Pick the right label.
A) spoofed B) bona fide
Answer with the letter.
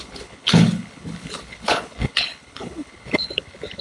A